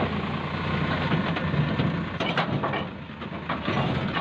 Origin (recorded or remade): recorded